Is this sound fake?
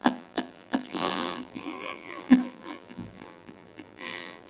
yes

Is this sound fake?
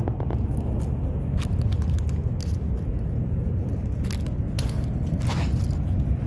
no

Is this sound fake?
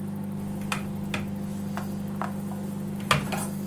no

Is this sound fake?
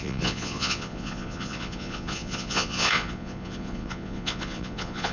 yes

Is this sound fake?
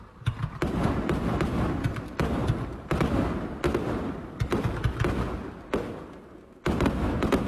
no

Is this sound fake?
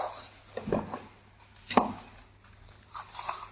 no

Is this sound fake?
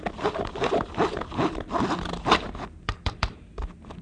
yes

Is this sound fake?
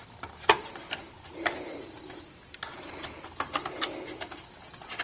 no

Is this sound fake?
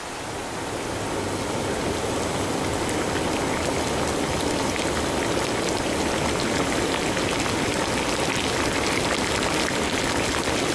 no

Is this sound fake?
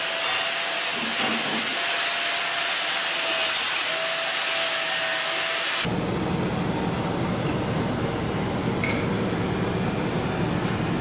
no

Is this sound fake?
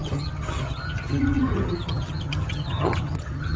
yes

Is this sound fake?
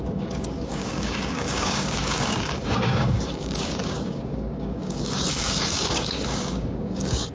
yes